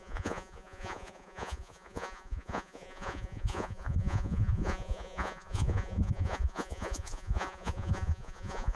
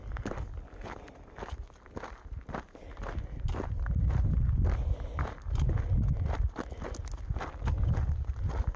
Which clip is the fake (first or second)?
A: first